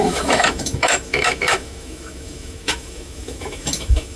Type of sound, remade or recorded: remade